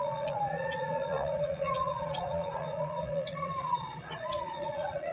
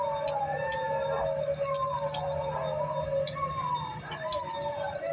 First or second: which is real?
second